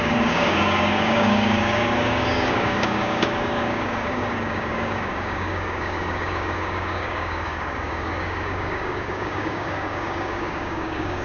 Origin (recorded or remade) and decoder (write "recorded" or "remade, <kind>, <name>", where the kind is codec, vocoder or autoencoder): remade, codec, DAC